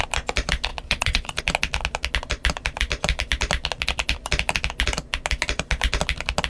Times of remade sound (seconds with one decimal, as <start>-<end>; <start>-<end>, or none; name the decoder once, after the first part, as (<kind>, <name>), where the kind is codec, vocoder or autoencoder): 0.7-1.4 (vocoder, Vocos)